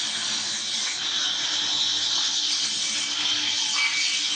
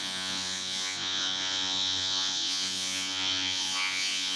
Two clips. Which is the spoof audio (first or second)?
second